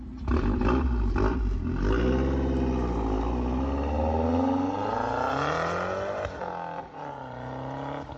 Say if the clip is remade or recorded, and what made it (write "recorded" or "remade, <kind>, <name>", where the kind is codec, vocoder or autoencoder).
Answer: recorded